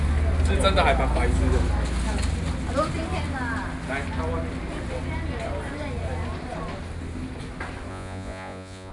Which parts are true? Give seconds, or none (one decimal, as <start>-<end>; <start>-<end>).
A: 0.0-7.9